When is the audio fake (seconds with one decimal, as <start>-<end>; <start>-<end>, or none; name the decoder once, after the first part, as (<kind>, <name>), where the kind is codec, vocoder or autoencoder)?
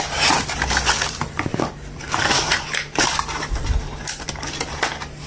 1.5-4.3 (vocoder, BigVGAN v2)